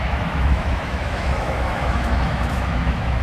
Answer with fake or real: fake